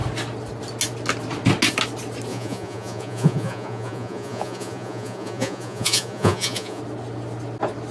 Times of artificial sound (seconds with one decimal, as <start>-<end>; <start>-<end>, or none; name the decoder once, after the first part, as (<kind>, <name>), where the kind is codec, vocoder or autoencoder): 2.3-6.8 (vocoder, Vocos)